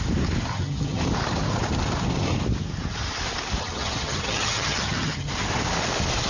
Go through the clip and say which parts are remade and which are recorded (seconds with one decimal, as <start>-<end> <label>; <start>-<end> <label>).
0.0-0.5 recorded; 0.5-1.0 remade; 1.0-3.6 recorded; 3.6-5.3 remade; 5.3-6.3 recorded